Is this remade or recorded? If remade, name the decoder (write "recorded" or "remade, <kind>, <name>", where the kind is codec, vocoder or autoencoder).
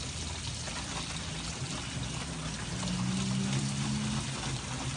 recorded